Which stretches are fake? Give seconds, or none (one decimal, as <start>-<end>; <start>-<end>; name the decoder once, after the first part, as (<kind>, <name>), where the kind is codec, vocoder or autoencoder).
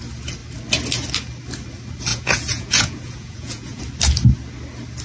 2.1-3.8 (vocoder, Vocos)